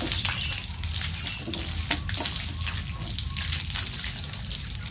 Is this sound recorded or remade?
recorded